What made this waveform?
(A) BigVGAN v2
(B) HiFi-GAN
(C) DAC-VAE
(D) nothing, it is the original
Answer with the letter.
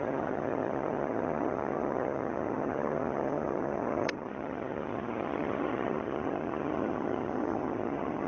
B